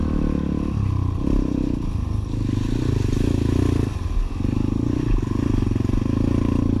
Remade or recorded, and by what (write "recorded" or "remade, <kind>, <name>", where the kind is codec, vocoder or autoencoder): recorded